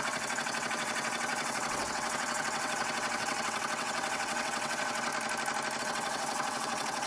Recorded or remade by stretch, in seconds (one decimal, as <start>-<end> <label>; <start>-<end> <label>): 0.0-5.1 remade; 5.1-5.8 recorded; 5.8-7.1 remade